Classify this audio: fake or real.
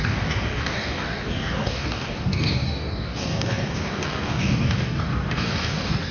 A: fake